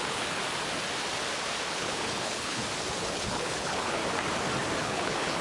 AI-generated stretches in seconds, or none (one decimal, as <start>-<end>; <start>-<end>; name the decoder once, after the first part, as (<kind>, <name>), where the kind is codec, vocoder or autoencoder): 0.0-0.4 (codec, HILCodec); 1.7-2.6; 3.1-4.0; 4.8-5.4